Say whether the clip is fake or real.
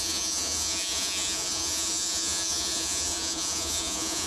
fake